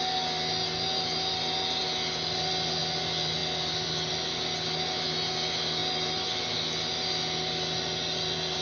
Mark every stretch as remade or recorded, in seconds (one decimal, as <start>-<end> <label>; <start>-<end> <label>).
0.0-8.6 recorded